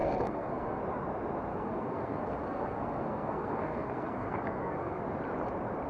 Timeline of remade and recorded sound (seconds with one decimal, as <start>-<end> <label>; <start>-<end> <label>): 0.0-0.8 remade; 0.8-1.5 recorded; 1.5-5.0 remade; 5.0-5.9 recorded